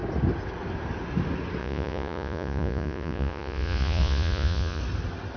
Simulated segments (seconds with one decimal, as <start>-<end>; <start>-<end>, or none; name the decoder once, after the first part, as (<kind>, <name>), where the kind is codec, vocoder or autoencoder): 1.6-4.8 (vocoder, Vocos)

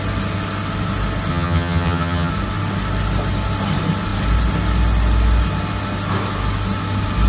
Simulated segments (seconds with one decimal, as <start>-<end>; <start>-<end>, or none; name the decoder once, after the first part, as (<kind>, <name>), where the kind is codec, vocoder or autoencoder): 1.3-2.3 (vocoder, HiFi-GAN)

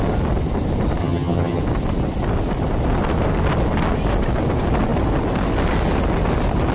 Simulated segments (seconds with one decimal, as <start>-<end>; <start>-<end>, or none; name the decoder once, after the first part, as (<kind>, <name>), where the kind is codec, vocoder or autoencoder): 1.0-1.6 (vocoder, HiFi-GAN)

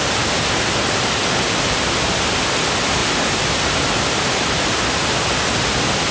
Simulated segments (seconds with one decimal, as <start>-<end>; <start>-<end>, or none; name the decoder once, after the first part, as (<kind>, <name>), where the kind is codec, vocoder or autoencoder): none

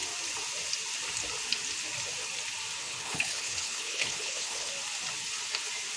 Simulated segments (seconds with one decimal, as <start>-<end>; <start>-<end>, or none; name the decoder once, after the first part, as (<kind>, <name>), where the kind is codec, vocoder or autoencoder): 2.8-4.7 (codec, HILCodec)

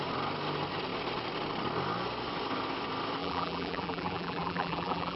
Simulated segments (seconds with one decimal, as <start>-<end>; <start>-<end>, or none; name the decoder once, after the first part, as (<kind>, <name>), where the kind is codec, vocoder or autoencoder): 3.2-5.2 (vocoder, BigVGAN v2)

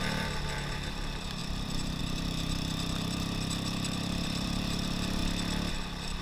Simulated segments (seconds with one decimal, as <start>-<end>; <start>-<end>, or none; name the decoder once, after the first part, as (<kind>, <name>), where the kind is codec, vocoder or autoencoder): 0.0-5.2 (vocoder, BigVGAN v2); 5.7-6.2